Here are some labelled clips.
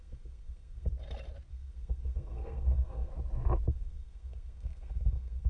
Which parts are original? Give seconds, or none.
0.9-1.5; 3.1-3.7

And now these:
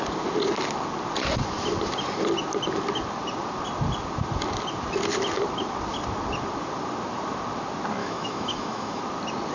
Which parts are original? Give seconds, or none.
0.0-8.0; 9.0-9.5

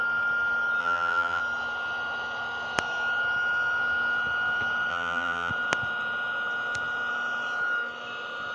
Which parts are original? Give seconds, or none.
0.0-0.8; 1.4-4.9; 5.5-8.5

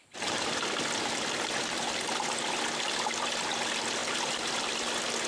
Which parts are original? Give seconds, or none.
0.0-5.3